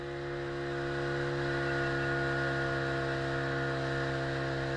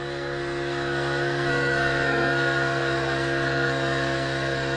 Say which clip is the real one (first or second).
first